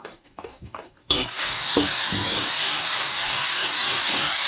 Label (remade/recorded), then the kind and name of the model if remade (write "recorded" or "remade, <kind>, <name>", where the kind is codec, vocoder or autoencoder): remade, codec, DAC